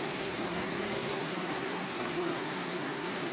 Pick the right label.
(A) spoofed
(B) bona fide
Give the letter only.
A